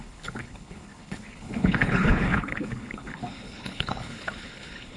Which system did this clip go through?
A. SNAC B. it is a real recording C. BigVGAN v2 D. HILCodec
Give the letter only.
D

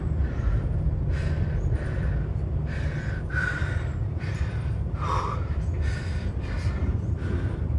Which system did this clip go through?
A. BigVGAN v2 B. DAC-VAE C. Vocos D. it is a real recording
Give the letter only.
A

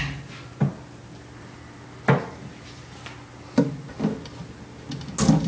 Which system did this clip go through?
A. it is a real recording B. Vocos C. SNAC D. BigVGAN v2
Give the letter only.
A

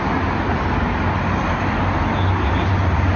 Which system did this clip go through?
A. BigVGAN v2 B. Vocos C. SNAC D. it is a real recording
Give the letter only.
D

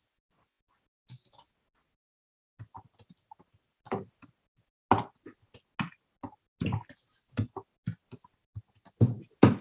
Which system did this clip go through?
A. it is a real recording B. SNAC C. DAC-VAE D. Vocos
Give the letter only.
A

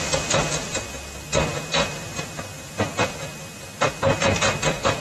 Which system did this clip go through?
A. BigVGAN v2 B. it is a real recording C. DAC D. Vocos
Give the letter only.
B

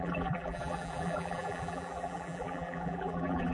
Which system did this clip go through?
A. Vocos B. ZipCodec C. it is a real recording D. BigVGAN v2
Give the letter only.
D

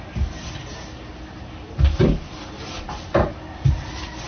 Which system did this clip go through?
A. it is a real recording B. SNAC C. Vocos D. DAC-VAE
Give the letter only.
A